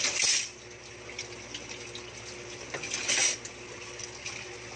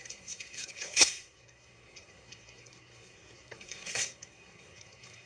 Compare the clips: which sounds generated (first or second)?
second